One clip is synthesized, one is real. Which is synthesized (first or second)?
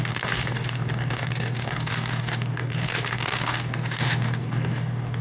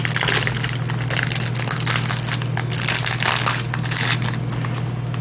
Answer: first